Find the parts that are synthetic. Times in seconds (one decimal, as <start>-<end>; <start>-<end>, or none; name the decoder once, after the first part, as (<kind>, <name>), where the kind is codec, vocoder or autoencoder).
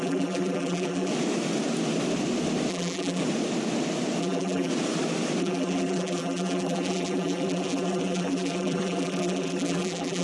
0.0-1.1 (vocoder, BigVGAN v2); 2.7-3.2; 4.2-4.7; 5.4-10.2